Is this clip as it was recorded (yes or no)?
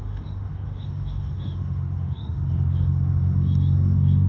no